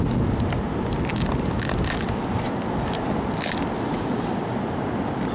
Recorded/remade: recorded